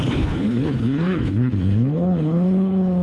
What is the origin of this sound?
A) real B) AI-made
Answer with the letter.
B